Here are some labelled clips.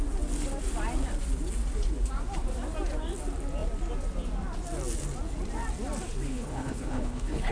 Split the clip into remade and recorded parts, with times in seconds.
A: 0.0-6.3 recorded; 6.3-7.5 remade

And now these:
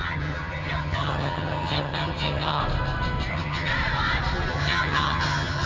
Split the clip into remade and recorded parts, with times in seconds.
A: 0.0-2.6 remade; 2.6-3.3 recorded; 3.3-3.7 remade; 3.7-4.5 recorded; 4.5-5.7 remade

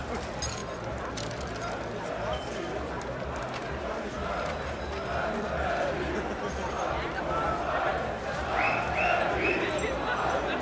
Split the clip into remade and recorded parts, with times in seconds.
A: 0.0-10.6 recorded

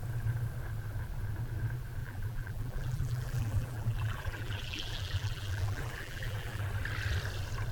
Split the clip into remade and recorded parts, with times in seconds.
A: 0.0-2.0 recorded; 2.0-6.6 remade; 6.6-7.7 recorded

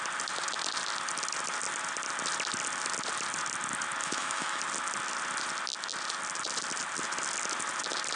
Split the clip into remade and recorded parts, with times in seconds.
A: 0.0-4.0 recorded; 4.0-4.6 remade; 4.6-8.2 recorded

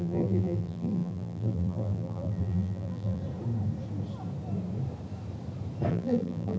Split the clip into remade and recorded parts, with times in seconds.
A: 0.0-3.2 remade; 3.2-5.9 recorded; 5.9-6.6 remade

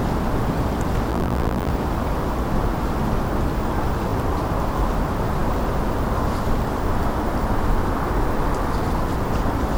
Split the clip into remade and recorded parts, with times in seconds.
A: 0.0-1.1 recorded; 1.1-1.7 remade; 1.7-9.8 recorded